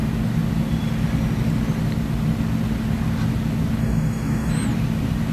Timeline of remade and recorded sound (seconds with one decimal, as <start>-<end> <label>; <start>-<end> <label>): 0.0-3.8 recorded; 3.8-4.5 remade; 4.5-5.3 recorded